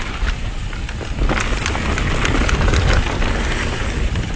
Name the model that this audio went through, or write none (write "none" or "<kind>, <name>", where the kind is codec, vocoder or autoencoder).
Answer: none